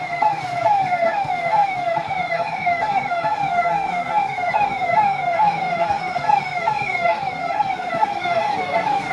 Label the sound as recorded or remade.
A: remade